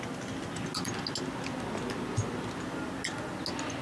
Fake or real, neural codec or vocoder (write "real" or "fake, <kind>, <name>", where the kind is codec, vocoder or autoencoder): real